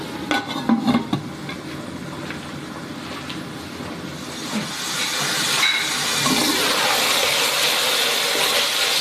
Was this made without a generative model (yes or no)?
yes